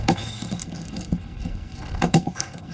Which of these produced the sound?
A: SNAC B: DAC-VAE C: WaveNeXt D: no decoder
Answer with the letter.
A